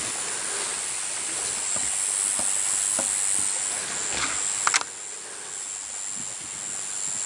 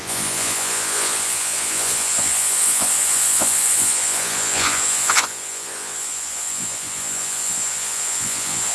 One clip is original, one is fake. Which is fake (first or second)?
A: second